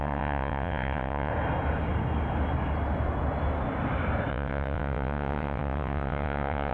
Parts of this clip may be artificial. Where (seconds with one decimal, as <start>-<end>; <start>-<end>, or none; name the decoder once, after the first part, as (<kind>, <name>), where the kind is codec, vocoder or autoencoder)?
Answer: 0.0-1.3 (vocoder, WaveNeXt); 4.3-6.7